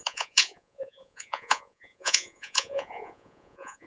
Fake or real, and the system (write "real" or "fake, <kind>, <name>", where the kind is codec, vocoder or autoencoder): fake, vocoder, Vocos